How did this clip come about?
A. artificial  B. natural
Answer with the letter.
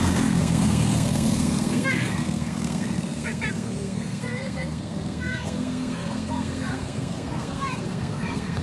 A